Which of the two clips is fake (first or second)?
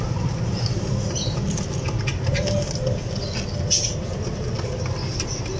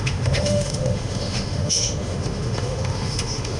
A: second